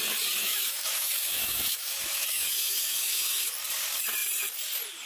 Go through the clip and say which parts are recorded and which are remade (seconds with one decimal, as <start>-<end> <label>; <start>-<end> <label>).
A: 0.0-0.4 recorded; 0.4-3.5 remade; 3.5-5.1 recorded